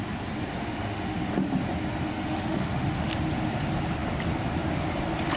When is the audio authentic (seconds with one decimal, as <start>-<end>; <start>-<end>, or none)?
0.0-0.5; 1.3-2.1; 3.1-5.4